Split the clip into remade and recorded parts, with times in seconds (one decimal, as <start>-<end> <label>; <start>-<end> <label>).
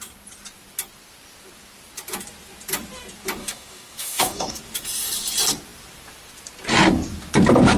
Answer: 0.0-3.4 recorded; 3.4-4.6 remade; 4.6-7.8 recorded